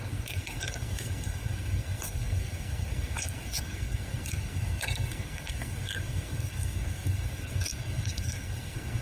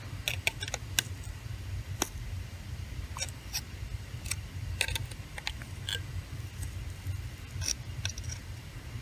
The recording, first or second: second